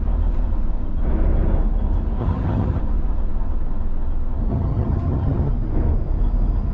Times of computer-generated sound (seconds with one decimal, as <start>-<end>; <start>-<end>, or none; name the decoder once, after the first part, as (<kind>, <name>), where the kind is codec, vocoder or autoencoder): 2.2-2.8 (vocoder, HiFi-GAN); 4.5-5.5